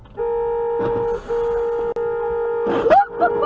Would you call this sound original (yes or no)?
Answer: yes